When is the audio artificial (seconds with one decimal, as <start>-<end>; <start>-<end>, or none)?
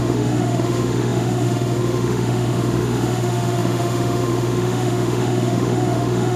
0.0-6.4